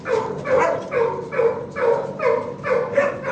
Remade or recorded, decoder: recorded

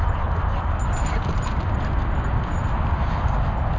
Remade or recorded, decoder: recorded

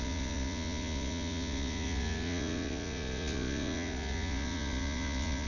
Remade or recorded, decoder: remade, vocoder, Vocos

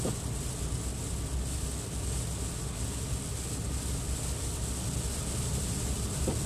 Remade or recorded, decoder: recorded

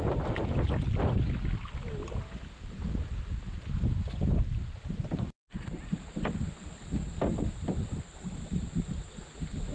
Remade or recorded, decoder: recorded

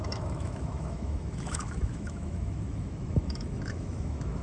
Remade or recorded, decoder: remade, autoencoder, DAC-VAE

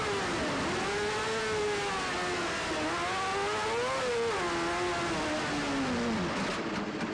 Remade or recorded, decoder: recorded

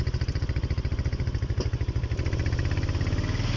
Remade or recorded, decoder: recorded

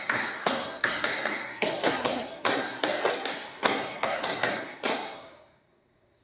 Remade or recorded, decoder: remade, codec, SNAC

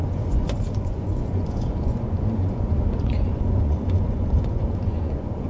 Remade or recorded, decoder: remade, vocoder, Vocos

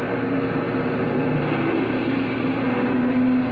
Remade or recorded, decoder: recorded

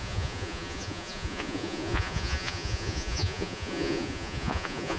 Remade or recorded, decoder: remade, vocoder, Vocos